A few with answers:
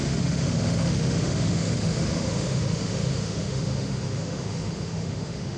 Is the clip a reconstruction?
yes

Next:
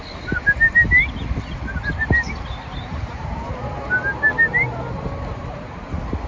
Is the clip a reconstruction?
no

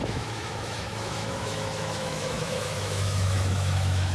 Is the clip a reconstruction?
yes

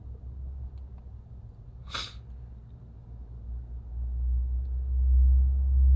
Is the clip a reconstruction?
no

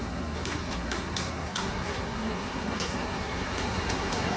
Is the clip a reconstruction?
yes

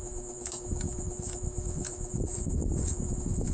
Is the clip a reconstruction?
yes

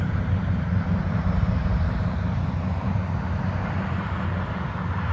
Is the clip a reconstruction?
yes